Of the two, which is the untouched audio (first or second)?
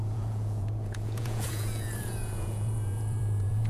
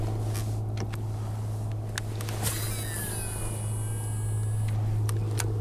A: second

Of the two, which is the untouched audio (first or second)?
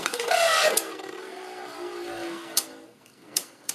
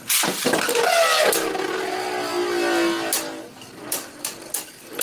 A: second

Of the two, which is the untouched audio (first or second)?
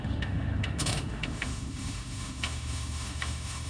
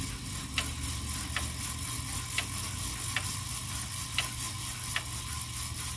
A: second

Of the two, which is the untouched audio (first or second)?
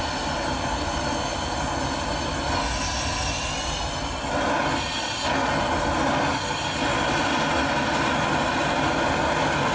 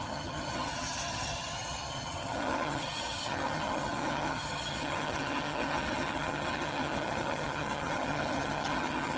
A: first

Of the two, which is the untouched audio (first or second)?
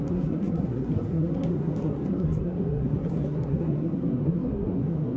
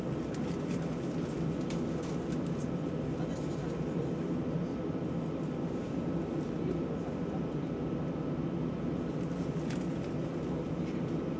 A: second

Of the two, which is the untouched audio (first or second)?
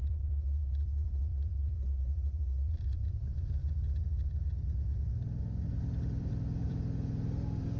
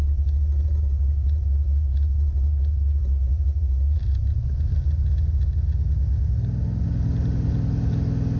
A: second